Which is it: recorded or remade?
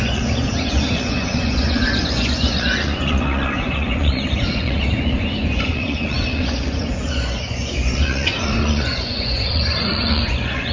remade